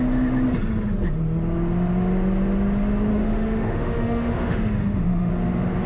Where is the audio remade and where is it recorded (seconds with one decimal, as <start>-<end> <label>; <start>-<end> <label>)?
0.0-3.1 recorded; 3.1-5.3 remade; 5.3-5.9 recorded